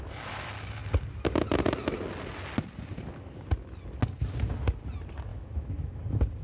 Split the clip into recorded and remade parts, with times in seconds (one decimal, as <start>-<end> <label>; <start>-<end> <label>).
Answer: 0.0-5.3 recorded; 5.3-6.0 remade; 6.0-6.4 recorded